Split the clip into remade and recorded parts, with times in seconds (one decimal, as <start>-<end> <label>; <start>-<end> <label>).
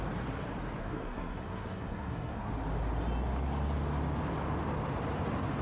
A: 0.0-0.8 recorded; 0.8-2.5 remade; 2.5-5.6 recorded